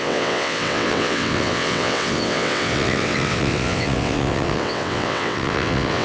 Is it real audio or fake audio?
fake